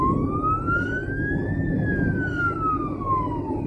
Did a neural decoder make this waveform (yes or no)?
no